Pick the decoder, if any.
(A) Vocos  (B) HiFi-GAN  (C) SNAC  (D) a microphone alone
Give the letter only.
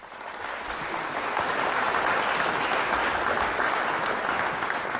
D